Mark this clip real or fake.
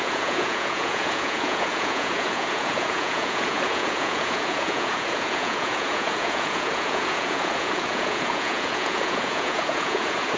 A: fake